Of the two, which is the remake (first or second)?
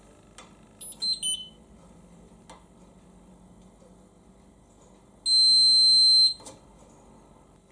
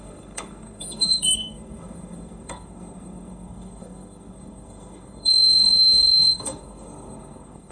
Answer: second